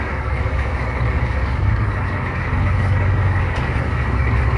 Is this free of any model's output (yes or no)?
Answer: no